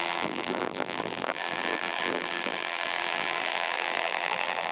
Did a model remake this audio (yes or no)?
yes